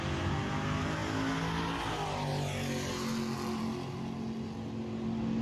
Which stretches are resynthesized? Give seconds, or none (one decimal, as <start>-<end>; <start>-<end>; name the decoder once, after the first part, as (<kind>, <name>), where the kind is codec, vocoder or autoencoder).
none